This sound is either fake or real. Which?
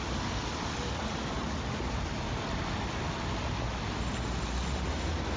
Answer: real